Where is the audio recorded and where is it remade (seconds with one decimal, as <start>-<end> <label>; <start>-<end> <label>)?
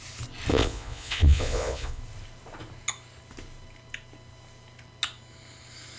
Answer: 0.0-0.5 recorded; 0.5-2.0 remade; 2.0-6.0 recorded